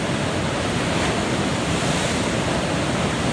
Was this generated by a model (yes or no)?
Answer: no